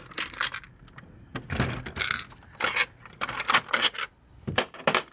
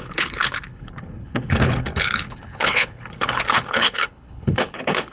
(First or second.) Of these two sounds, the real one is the first